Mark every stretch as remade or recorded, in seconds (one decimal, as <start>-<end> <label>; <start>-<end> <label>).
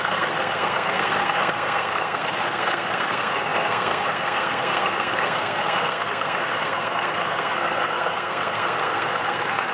0.0-9.7 remade